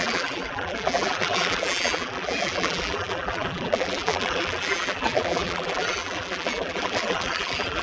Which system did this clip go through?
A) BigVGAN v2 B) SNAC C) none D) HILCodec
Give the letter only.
A